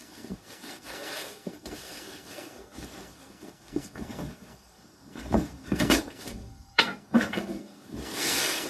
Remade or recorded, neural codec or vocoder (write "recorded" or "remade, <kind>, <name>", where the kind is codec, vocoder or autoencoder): remade, codec, SNAC